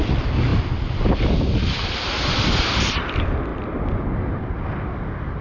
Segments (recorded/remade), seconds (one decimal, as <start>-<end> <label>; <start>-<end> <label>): 0.0-5.4 recorded

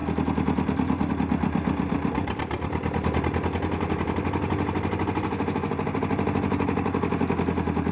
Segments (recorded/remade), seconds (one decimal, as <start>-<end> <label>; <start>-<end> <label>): 0.0-7.9 recorded

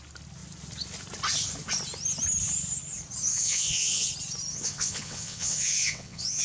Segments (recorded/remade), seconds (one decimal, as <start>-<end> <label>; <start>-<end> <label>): 0.0-3.3 recorded; 3.3-4.1 remade; 4.1-4.5 recorded; 4.5-6.4 remade

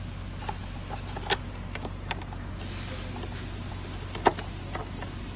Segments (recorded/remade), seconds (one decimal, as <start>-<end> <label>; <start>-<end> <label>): 0.0-5.4 recorded

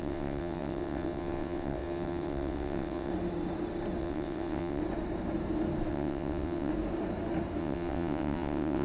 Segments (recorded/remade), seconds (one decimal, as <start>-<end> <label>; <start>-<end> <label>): 0.0-3.1 remade; 3.1-4.0 recorded; 4.0-4.8 remade; 4.8-5.9 recorded; 5.9-6.7 remade; 6.7-7.6 recorded; 7.6-8.8 remade

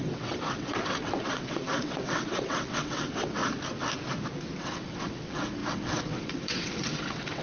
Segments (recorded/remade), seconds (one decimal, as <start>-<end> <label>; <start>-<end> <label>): 0.0-3.4 remade; 3.4-4.6 recorded; 4.6-7.4 remade

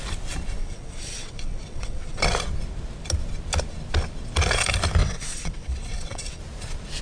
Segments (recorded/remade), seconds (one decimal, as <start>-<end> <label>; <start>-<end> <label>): 0.0-0.6 recorded; 0.6-2.2 remade; 2.2-5.0 recorded; 5.0-6.4 remade; 6.4-7.0 recorded